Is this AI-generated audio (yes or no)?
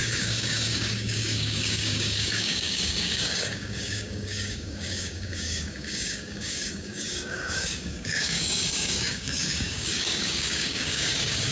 yes